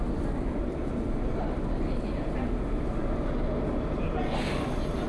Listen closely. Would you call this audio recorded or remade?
recorded